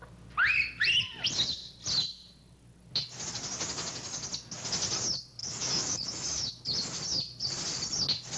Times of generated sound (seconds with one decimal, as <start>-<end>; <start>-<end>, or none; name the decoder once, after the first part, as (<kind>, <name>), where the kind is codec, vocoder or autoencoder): 5.4-6.5 (autoencoder, DAC-VAE)

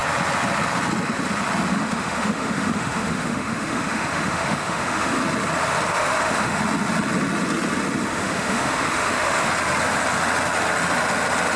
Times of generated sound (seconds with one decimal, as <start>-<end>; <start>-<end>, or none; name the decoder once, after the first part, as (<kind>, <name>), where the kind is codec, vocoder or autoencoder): 1.7-5.2 (autoencoder, DAC-VAE); 5.9-6.6; 8.1-9.5